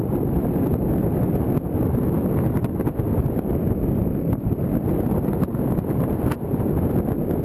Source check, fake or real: real